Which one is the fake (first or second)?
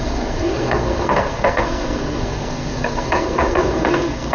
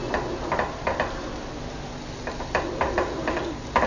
first